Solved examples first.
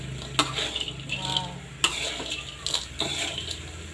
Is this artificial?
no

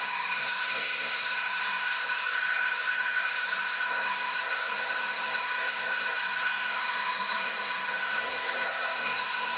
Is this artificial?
yes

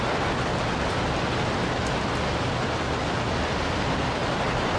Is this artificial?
no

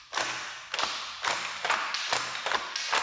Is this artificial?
no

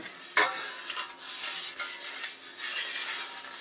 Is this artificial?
no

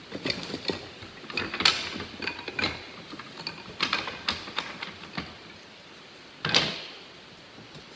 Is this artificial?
no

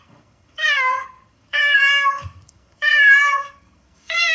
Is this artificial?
yes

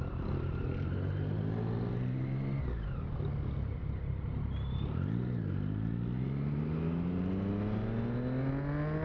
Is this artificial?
no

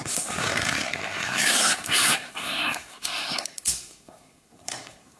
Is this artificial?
yes